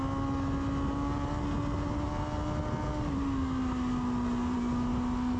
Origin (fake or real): real